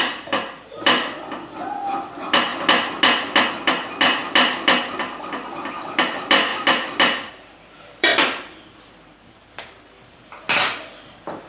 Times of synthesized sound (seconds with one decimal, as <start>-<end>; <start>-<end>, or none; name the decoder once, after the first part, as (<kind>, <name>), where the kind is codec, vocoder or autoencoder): 0.0-2.5 (vocoder, BigVGAN v2); 3.5-4.2; 6.0-8.1